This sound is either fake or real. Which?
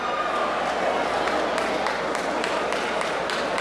real